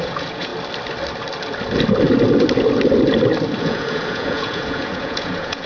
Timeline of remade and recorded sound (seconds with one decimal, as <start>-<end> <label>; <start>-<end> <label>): 0.0-0.5 remade; 0.5-3.6 recorded; 3.6-5.7 remade